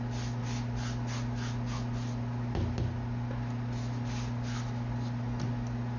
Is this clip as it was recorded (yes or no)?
yes